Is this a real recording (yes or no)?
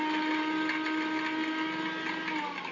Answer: yes